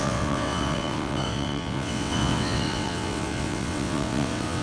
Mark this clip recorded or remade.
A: remade